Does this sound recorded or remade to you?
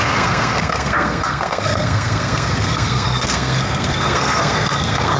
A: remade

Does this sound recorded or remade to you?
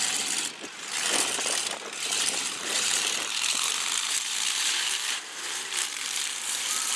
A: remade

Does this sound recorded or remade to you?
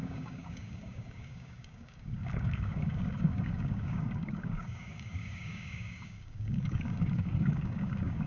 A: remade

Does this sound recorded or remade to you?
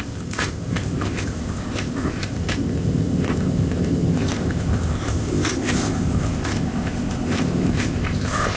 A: remade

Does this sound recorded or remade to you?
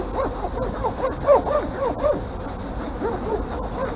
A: recorded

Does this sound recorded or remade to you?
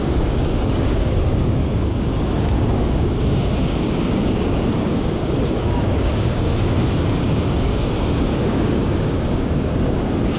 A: remade